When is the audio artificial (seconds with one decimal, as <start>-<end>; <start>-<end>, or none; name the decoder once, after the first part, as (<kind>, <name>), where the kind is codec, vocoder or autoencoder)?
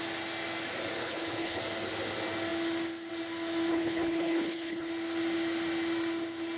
1.0-1.6 (codec, HILCodec); 3.7-4.9